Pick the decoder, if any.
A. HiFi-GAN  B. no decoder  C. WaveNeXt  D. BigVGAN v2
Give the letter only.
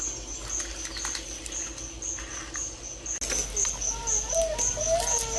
B